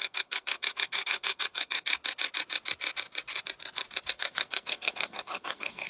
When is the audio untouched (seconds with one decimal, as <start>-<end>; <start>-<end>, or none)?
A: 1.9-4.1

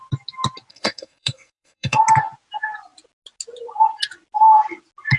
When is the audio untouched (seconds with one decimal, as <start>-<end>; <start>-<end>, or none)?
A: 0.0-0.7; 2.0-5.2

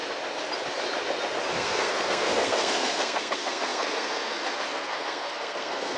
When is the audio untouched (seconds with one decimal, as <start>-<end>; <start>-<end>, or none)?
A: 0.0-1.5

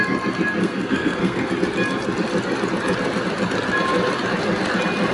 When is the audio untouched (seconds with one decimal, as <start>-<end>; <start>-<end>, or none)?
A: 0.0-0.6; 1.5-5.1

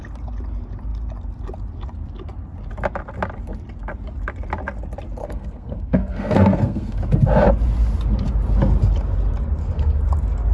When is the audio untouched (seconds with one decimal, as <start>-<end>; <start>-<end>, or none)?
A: 0.0-5.2; 7.0-9.6; 10.1-10.5

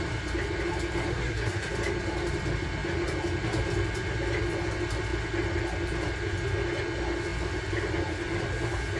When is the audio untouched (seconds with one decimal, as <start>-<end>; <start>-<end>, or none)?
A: 0.0-1.1; 1.7-9.0